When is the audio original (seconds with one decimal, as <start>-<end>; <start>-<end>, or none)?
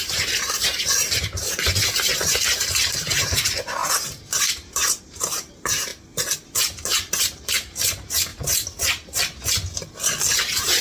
5.9-7.1; 8.3-10.4